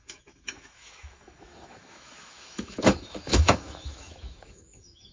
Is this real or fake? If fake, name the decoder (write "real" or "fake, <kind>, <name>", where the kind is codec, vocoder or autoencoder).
fake, autoencoder, DAC-VAE